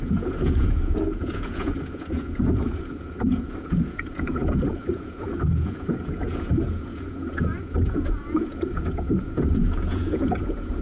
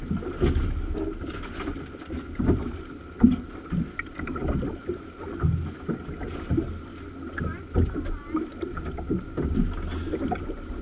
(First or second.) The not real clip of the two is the first